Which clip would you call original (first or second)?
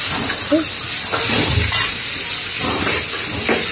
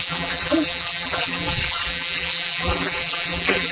first